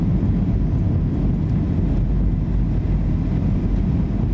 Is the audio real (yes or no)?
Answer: yes